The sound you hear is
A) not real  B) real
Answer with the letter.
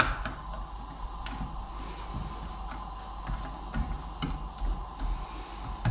B